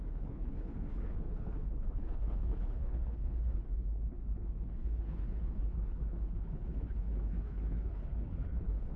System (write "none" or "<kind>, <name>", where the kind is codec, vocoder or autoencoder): codec, HILCodec